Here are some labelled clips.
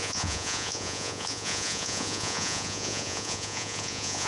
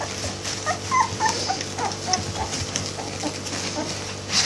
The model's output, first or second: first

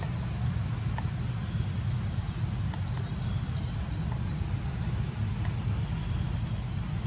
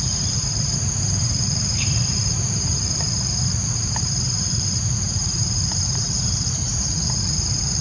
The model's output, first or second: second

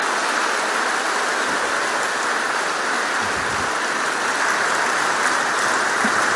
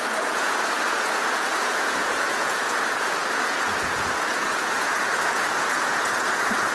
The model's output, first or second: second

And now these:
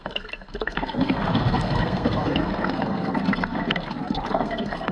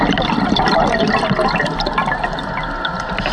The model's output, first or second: first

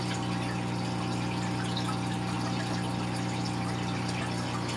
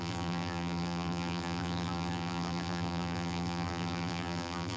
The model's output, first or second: second